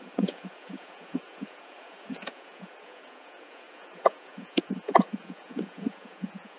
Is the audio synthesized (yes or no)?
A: yes